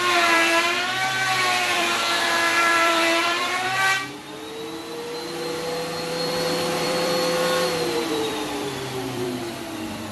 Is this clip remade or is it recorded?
remade